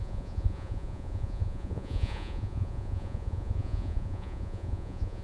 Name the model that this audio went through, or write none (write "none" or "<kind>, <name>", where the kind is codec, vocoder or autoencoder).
vocoder, Vocos